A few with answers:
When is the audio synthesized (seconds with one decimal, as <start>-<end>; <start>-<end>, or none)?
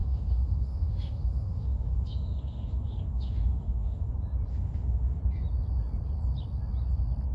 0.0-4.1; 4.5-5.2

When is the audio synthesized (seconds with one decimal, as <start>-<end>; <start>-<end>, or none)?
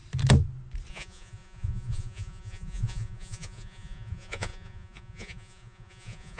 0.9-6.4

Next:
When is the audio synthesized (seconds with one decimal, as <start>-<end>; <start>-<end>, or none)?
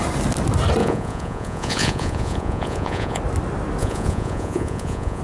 0.8-3.2; 3.8-5.2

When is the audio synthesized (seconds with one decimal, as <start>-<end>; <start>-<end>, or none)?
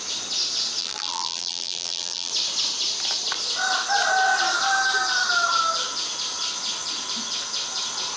0.8-2.3